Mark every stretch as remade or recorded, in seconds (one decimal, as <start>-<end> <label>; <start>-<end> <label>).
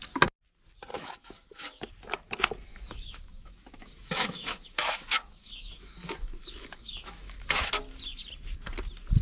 0.0-0.9 recorded; 0.9-1.9 remade; 1.9-2.7 recorded; 2.7-7.8 remade; 7.8-9.2 recorded